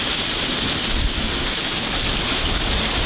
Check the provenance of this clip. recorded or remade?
recorded